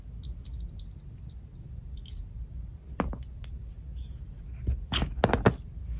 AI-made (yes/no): no